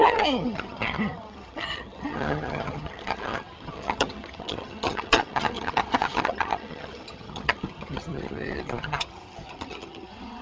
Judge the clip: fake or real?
fake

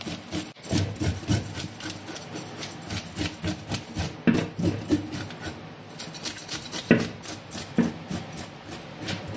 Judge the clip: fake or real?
real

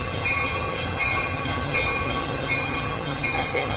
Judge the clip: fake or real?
fake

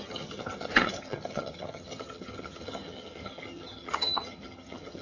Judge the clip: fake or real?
fake